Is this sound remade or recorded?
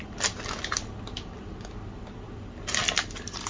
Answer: recorded